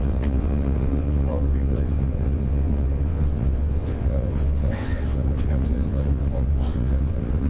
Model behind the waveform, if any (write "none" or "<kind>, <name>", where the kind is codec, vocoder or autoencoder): vocoder, WaveNeXt